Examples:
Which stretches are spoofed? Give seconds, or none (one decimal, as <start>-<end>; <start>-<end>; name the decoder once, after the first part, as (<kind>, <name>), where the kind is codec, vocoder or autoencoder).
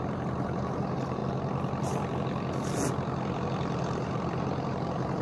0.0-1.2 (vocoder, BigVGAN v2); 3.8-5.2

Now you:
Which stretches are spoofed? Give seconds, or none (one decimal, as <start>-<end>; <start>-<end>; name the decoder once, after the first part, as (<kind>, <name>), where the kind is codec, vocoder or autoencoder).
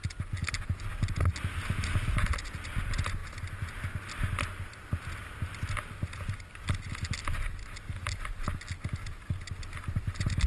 none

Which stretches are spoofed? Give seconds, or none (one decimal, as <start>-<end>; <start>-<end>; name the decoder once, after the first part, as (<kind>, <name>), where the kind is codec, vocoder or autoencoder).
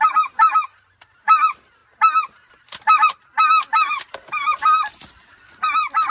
0.0-1.8 (vocoder, BigVGAN v2); 2.5-3.3; 3.9-6.1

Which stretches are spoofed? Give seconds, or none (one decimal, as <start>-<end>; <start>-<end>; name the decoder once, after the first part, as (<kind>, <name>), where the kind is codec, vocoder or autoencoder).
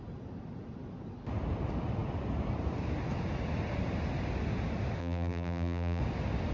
5.0-6.0 (vocoder, BigVGAN v2)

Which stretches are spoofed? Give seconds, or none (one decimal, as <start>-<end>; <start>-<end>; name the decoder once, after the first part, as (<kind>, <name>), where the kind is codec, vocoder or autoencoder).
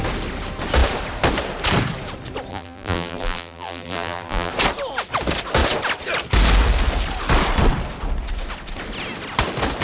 2.5-4.5 (vocoder, BigVGAN v2)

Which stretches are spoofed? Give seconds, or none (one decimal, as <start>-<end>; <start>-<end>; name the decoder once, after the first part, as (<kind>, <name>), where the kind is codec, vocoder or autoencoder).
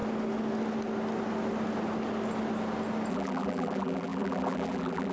3.1-5.1 (vocoder, BigVGAN v2)